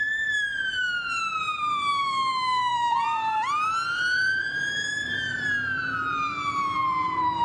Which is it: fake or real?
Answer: fake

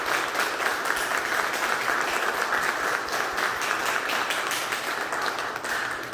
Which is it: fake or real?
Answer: real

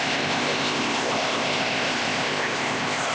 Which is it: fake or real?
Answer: fake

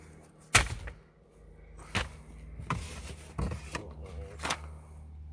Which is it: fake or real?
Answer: real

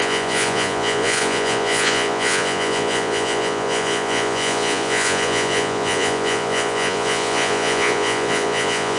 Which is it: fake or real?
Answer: fake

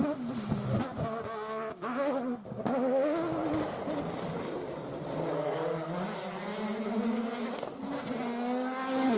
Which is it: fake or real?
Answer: real